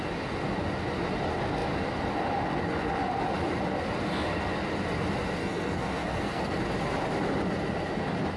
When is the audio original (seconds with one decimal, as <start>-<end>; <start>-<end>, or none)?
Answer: 0.0-5.4; 6.6-8.4